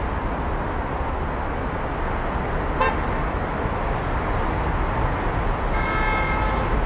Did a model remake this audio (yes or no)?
no